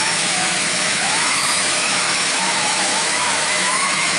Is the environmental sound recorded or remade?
remade